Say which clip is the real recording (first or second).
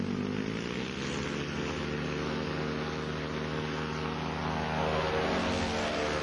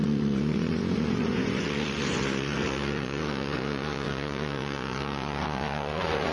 first